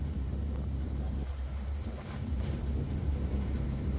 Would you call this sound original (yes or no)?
no